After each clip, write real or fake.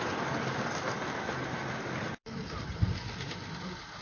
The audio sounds real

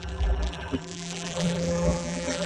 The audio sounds fake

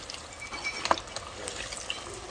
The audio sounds real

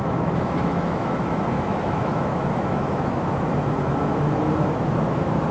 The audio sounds fake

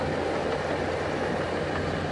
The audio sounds real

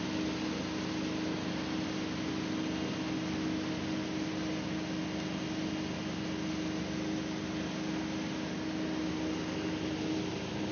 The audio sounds real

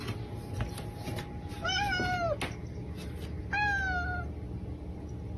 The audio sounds real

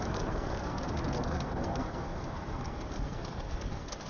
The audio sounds fake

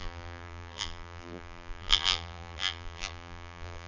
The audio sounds fake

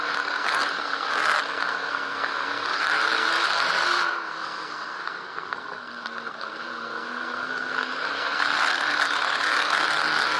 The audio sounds fake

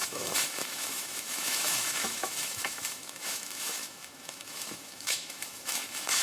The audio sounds fake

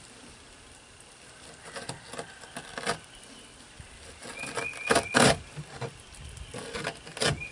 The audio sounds real